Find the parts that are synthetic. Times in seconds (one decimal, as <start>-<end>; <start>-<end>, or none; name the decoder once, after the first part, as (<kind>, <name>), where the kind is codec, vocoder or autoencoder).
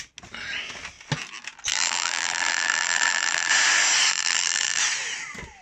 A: 1.7-3.5 (vocoder, BigVGAN v2); 4.1-4.8